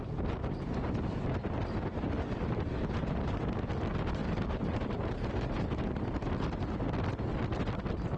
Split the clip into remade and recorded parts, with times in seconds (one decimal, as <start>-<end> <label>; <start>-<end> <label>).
0.0-4.2 recorded; 4.2-5.3 remade; 5.3-8.2 recorded